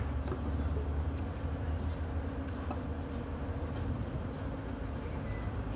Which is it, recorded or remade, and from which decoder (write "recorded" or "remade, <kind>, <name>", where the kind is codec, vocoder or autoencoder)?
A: recorded